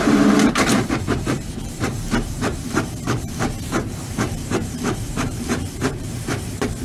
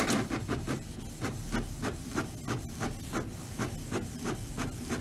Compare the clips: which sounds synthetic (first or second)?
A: first